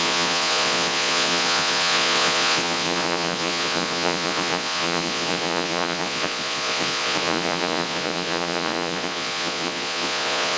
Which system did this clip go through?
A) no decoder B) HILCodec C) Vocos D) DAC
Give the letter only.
C